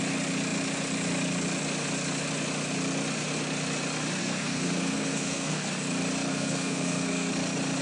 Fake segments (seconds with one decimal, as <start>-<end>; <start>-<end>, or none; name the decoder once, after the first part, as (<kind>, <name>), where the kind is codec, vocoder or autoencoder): 4.2-5.6 (codec, SNAC); 6.3-7.3

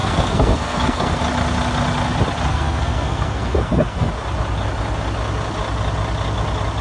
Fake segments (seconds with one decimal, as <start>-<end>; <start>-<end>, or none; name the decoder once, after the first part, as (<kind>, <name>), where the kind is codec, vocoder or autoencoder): 0.0-1.2 (codec, SNAC); 2.5-4.1

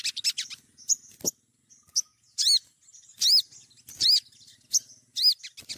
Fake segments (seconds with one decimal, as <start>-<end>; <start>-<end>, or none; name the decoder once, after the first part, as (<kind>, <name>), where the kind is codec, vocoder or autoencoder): none

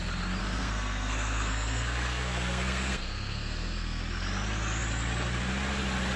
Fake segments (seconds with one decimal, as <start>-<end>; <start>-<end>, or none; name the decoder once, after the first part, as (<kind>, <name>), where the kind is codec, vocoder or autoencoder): 0.4-4.0 (codec, SNAC)

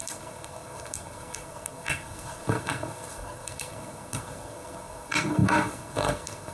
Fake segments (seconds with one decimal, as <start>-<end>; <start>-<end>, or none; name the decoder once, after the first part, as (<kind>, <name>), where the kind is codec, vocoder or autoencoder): 0.0-6.5 (codec, SNAC)

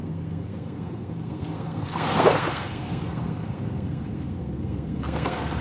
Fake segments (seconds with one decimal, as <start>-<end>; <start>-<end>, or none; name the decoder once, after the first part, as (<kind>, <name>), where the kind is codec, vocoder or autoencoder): 0.0-5.6 (codec, SNAC)

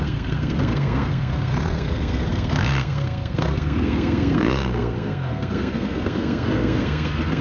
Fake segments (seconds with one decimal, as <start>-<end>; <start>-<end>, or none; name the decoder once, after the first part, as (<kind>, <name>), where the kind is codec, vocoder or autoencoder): 0.0-7.4 (codec, SNAC)